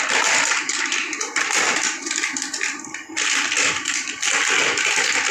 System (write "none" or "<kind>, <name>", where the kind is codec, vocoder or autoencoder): none